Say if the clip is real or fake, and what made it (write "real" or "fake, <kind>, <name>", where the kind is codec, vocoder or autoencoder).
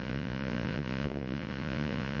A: fake, vocoder, Vocos